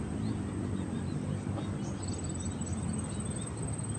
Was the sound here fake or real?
real